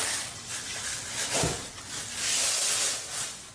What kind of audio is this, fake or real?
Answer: real